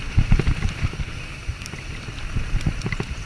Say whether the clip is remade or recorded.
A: recorded